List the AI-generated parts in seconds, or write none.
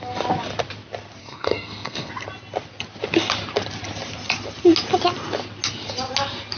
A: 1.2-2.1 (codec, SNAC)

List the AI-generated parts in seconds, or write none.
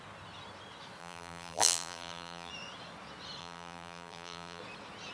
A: 1.0-2.5 (vocoder, BigVGAN v2); 3.4-4.6